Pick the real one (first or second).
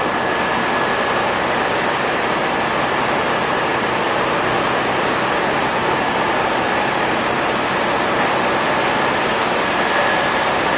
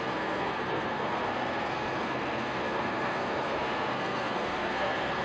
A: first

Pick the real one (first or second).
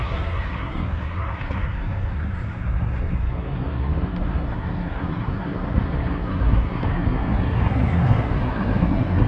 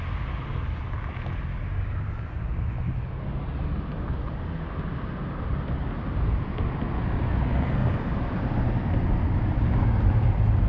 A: second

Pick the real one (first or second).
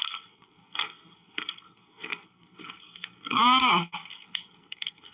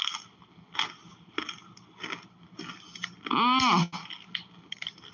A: second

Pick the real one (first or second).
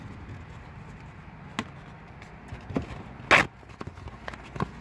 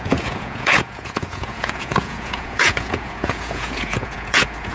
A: first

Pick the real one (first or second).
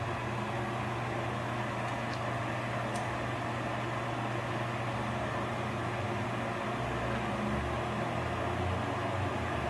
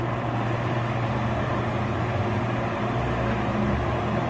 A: first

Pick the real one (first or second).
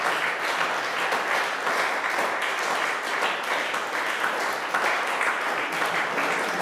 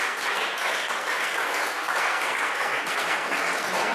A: first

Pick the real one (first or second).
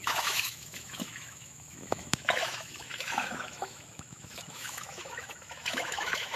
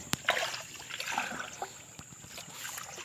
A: second